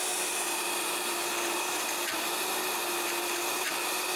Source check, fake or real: real